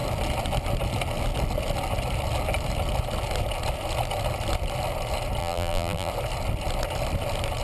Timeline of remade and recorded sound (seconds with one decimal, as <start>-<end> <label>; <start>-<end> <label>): 0.0-5.4 recorded; 5.4-6.1 remade; 6.1-7.6 recorded